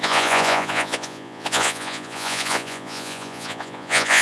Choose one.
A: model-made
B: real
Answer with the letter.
A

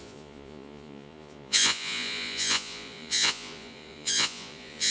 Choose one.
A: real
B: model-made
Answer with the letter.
B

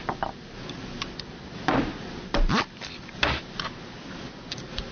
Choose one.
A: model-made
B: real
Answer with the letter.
B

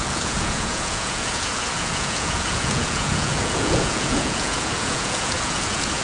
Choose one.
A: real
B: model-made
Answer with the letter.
B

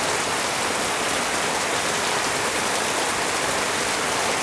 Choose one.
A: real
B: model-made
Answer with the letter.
A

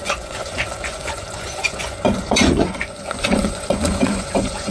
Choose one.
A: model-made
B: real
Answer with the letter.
A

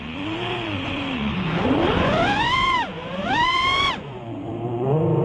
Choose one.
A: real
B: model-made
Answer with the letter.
B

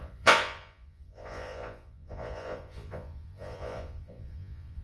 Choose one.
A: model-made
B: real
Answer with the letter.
A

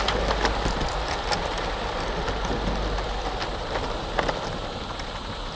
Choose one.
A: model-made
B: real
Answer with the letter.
B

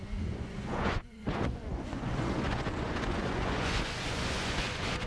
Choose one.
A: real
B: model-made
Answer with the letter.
B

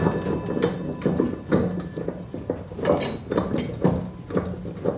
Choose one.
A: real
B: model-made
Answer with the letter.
A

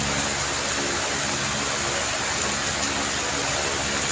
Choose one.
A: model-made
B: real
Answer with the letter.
B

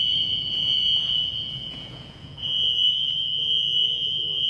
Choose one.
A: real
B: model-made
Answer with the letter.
B